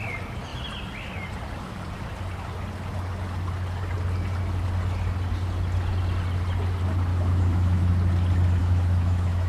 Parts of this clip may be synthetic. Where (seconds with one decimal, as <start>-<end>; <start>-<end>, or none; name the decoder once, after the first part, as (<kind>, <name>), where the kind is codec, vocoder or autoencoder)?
7.1-7.9 (autoencoder, DAC-VAE); 8.6-9.5